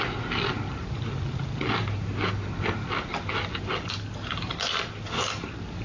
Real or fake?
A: real